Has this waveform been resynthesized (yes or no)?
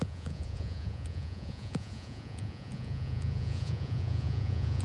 yes